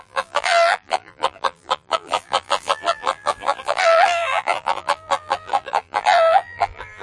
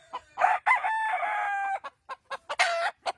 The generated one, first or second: first